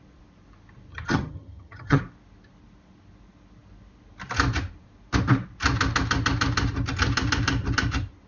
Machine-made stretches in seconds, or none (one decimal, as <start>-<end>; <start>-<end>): 0.9-2.0